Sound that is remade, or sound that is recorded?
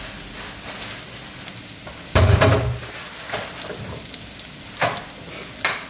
recorded